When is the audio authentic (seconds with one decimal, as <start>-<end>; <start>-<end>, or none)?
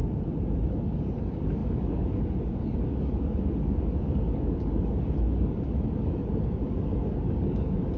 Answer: 0.0-0.7